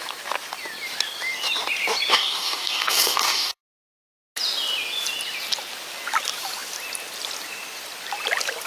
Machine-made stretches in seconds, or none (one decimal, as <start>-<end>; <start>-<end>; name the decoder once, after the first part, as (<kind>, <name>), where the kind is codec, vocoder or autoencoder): 2.1-3.6 (codec, DAC)